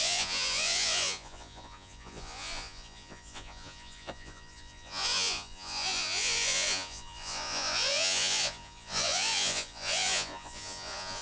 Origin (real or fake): fake